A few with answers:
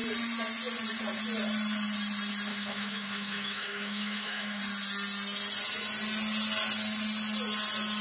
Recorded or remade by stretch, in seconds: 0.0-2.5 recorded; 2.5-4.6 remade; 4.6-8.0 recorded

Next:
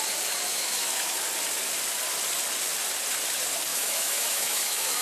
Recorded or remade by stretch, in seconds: 0.0-0.5 recorded; 0.5-1.2 remade; 1.2-3.7 recorded; 3.7-5.0 remade

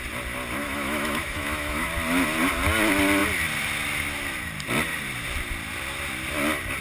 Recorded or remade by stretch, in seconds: 0.0-0.6 recorded; 0.6-1.9 remade; 1.9-6.8 recorded

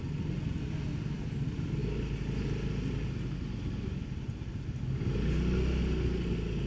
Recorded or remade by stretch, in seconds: 0.0-6.7 recorded